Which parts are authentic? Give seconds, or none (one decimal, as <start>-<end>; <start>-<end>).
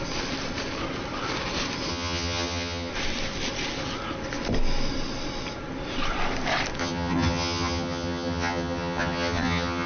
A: 0.0-1.9; 2.9-6.8